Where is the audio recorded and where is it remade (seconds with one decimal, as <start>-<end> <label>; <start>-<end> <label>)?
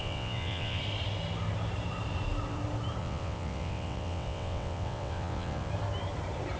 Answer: 0.0-0.8 remade; 0.8-3.0 recorded; 3.0-5.7 remade; 5.7-6.6 recorded